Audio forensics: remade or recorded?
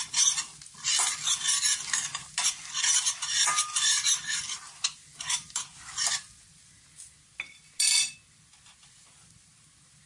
recorded